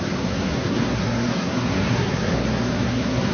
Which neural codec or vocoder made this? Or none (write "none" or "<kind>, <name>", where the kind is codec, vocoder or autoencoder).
codec, SNAC